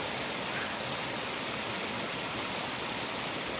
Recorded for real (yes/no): yes